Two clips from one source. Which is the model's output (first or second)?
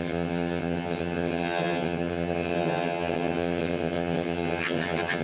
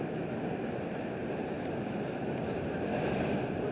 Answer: first